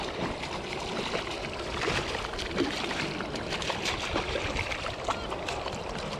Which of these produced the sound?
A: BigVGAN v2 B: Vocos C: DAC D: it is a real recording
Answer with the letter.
A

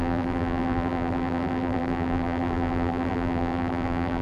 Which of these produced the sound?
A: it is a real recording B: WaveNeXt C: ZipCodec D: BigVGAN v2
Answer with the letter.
D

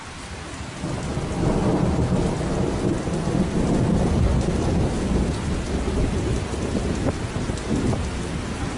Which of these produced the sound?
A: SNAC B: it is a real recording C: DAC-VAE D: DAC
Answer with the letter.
B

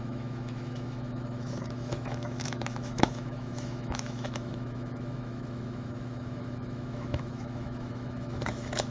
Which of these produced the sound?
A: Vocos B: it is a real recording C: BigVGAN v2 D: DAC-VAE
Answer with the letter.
D